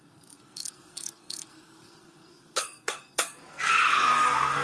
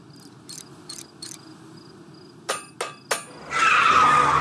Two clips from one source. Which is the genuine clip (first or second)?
second